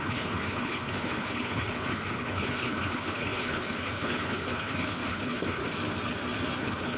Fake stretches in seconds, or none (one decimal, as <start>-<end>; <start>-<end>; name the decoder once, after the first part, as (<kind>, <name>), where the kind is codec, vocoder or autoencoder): 0.0-5.6 (codec, HILCodec); 6.6-7.0